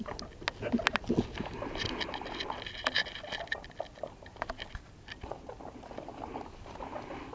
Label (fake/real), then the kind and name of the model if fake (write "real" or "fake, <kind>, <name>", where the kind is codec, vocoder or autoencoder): real